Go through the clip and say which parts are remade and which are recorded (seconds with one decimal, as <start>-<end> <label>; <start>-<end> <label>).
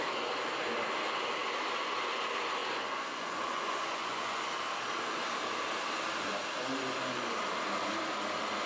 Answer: 0.0-2.6 recorded; 2.6-4.5 remade; 4.5-8.7 recorded